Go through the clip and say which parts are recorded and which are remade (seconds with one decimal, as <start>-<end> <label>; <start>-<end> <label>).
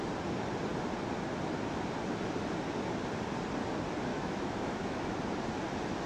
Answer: 0.0-4.1 recorded; 4.1-5.2 remade; 5.2-6.1 recorded